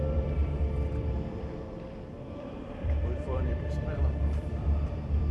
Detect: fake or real fake